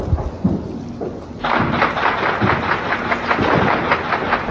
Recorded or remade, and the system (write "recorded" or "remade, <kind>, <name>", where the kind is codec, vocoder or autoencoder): recorded